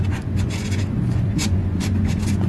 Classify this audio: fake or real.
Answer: fake